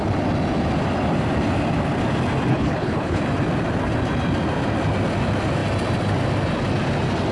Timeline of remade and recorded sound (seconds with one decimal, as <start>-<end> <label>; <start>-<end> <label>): 0.0-2.5 recorded; 2.5-3.2 remade; 3.2-7.3 recorded